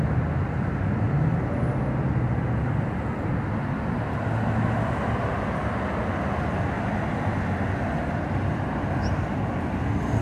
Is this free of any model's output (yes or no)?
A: yes